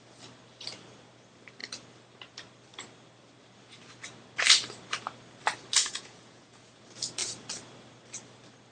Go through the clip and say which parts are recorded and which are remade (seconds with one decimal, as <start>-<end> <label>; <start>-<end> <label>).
0.0-5.8 recorded; 5.8-6.8 remade; 6.8-8.7 recorded